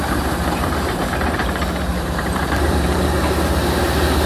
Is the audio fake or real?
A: fake